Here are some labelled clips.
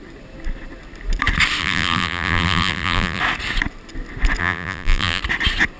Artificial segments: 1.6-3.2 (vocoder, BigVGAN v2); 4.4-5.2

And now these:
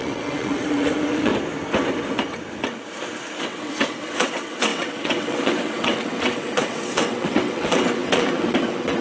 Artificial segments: 0.0-1.3 (vocoder, WaveNeXt); 3.4-9.0

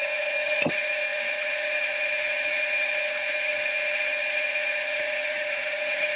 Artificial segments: 0.0-6.2 (vocoder, HiFi-GAN)

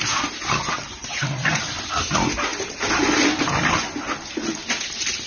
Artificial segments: none

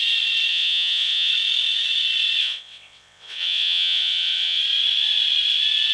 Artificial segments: 0.5-1.3 (vocoder, WaveNeXt); 2.4-4.6